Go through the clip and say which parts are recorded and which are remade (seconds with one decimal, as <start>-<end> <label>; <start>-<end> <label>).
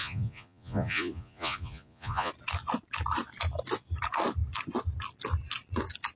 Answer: 0.0-2.3 remade; 2.3-6.2 recorded